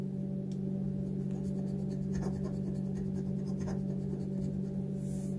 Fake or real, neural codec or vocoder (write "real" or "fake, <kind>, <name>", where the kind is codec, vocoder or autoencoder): real